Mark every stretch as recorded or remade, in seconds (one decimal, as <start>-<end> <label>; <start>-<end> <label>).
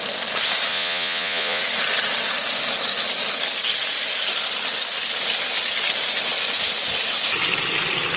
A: 0.0-0.7 recorded; 0.7-1.6 remade; 1.6-8.2 recorded